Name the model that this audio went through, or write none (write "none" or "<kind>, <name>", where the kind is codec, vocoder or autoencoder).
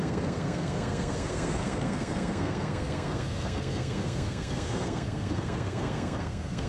codec, SNAC